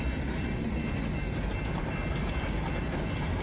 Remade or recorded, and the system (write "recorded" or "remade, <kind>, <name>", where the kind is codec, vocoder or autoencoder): recorded